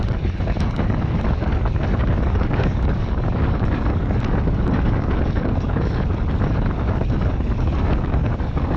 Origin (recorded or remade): remade